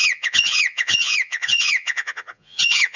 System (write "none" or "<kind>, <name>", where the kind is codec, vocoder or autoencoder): vocoder, Vocos